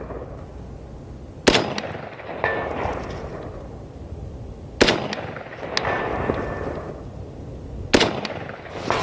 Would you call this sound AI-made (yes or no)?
no